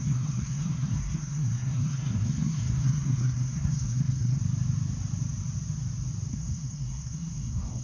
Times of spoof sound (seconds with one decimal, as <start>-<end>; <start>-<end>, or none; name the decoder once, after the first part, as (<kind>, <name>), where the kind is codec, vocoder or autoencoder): 0.0-4.4 (codec, SNAC); 6.3-7.8